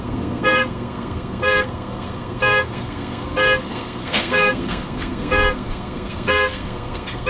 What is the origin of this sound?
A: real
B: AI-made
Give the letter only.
B